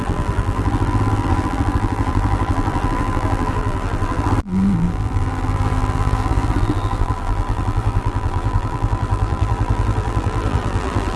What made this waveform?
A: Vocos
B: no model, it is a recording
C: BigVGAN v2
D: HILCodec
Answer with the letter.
C